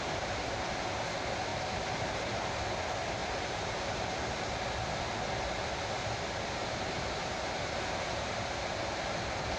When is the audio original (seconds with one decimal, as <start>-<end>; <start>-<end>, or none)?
0.0-1.5; 2.4-3.2; 4.3-6.6; 8.9-9.6